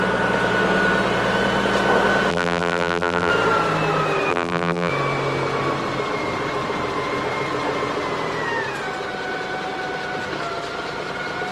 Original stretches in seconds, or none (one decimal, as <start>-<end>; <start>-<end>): 0.0-2.3; 3.3-4.3; 4.9-11.5